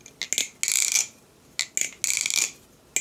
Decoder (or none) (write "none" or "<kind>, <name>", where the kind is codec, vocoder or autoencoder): none